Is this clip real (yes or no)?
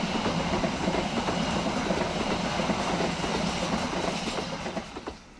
no